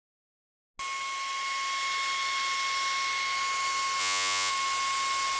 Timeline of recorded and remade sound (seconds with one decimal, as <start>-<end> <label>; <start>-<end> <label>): 0.0-4.0 recorded; 4.0-4.5 remade; 4.5-5.4 recorded